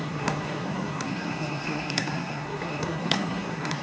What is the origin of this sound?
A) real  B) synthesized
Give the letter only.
B